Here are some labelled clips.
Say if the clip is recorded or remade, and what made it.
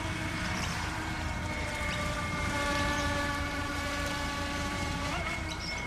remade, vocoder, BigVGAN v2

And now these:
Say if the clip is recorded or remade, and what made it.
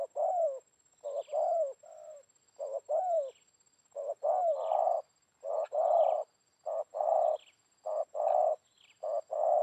recorded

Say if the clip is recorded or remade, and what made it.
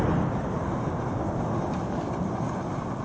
recorded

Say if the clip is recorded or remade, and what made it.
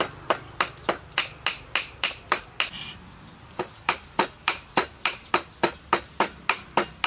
recorded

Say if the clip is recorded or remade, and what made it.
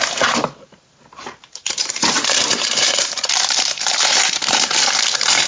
remade, vocoder, BigVGAN v2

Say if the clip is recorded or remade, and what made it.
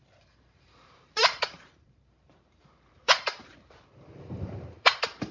remade, vocoder, BigVGAN v2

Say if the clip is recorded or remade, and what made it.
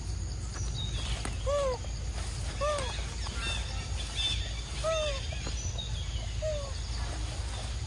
recorded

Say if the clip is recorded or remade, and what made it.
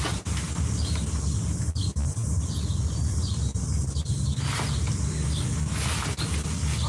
recorded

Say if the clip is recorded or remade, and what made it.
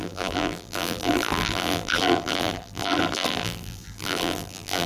remade, vocoder, BigVGAN v2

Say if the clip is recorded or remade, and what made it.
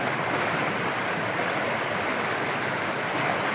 remade, vocoder, BigVGAN v2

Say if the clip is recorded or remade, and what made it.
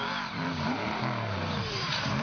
remade, vocoder, BigVGAN v2